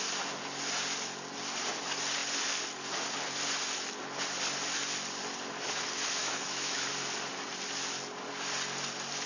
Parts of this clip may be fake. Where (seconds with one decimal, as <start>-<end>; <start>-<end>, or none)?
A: 6.2-6.9